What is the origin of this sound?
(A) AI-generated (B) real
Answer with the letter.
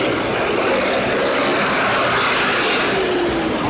B